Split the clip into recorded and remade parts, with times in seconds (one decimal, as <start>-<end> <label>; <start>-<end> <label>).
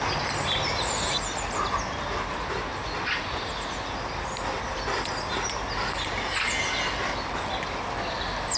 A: 0.0-8.6 recorded